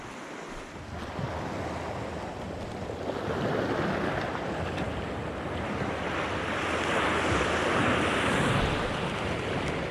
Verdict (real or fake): real